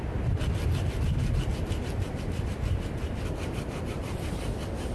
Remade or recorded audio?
recorded